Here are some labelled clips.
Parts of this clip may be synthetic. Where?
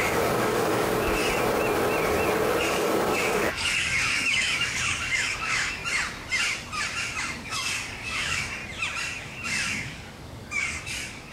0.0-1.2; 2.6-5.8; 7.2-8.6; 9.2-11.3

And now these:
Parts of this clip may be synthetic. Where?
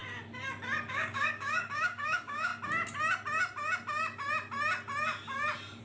0.9-2.5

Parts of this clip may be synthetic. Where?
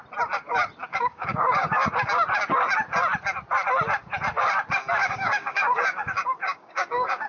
0.9-1.9; 5.0-7.3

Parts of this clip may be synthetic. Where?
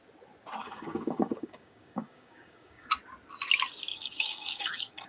0.6-2.9; 3.9-5.1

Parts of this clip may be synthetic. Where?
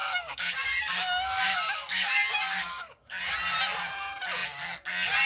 0.0-3.2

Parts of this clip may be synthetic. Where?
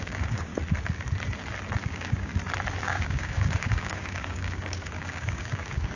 0.0-0.5; 1.8-2.3; 2.8-6.0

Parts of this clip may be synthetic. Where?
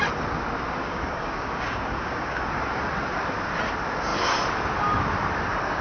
0.8-2.5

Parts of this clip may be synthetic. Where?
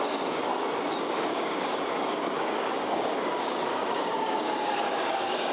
0.0-0.5; 1.0-5.5